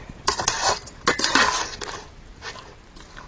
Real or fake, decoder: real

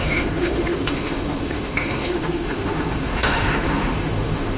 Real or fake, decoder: fake, autoencoder, DAC-VAE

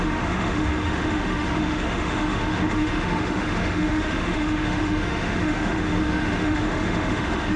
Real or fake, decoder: fake, autoencoder, DAC-VAE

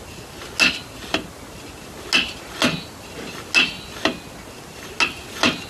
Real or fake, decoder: real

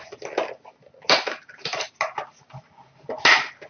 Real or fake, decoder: real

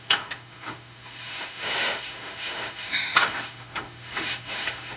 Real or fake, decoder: fake, autoencoder, DAC-VAE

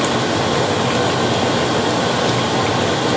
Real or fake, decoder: real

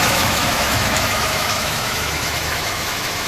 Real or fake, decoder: fake, autoencoder, DAC-VAE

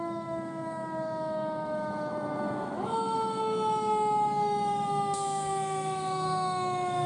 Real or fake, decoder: fake, autoencoder, DAC-VAE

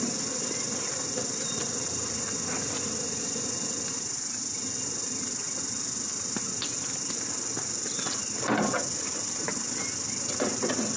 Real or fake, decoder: real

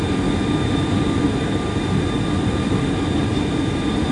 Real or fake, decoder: real